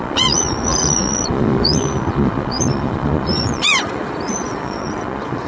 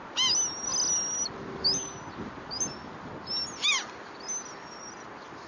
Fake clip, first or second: first